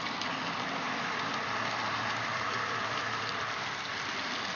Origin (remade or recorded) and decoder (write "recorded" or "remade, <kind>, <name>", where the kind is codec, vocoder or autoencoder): remade, vocoder, BigVGAN v2